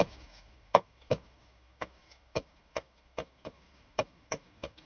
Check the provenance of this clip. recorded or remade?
remade